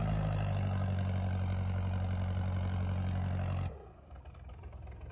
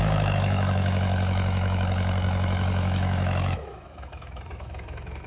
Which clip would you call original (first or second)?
first